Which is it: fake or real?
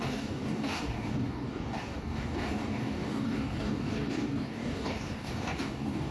fake